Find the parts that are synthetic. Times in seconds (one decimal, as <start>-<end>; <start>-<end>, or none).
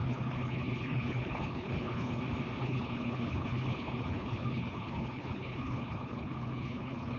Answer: 0.0-2.2; 2.6-7.2